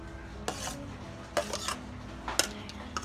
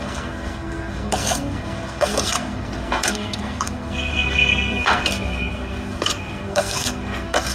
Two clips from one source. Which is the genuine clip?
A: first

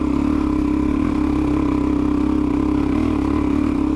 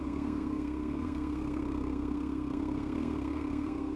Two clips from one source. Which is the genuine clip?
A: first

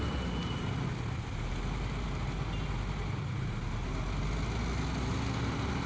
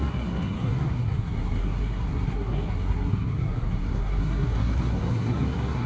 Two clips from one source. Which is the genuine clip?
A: first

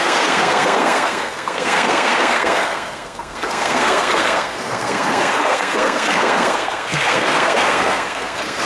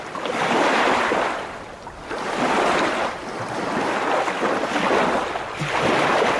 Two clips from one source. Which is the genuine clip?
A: second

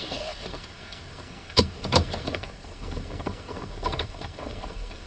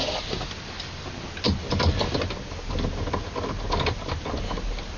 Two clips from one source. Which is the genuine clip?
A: second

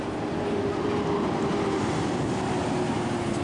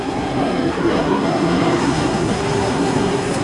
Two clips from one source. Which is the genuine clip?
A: first